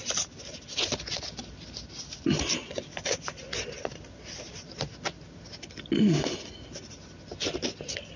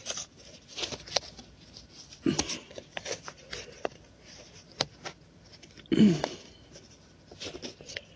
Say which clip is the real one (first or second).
first